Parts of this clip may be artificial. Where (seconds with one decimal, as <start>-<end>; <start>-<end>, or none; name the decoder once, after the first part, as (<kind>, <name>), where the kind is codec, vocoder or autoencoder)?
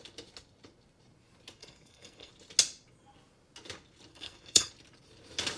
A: 1.6-2.3 (codec, SNAC); 4.1-4.7